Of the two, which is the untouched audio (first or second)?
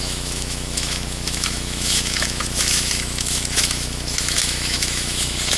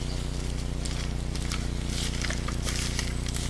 second